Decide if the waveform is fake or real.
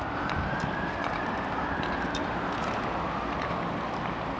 real